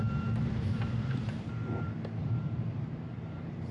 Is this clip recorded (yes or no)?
no